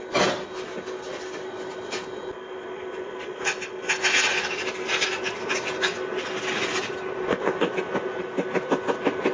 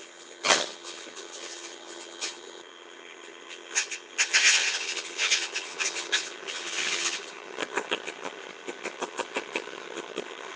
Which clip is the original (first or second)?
first